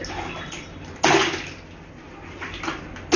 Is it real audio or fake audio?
real